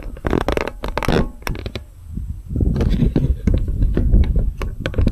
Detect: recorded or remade recorded